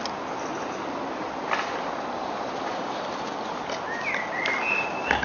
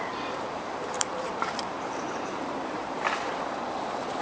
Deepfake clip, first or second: second